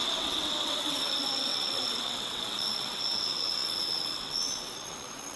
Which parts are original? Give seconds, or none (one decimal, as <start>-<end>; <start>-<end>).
none